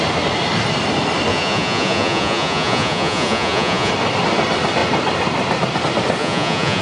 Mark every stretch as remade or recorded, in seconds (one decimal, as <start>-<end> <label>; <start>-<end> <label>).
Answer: 0.0-1.3 recorded; 1.3-3.9 remade; 3.9-6.2 recorded; 6.2-6.8 remade